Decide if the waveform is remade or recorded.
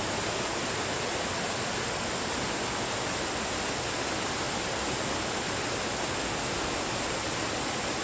recorded